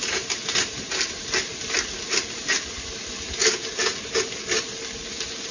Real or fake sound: real